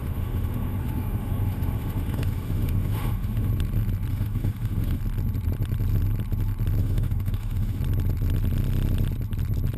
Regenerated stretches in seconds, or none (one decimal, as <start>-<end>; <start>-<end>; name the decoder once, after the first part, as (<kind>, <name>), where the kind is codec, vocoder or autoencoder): 0.0-3.5 (autoencoder, DAC-VAE); 4.1-5.0; 6.8-7.8